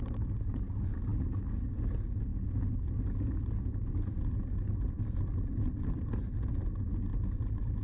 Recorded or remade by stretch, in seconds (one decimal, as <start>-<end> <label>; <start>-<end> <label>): 0.0-7.8 recorded